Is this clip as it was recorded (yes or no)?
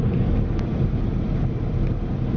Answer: yes